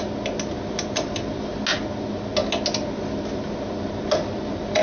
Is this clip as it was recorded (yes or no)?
yes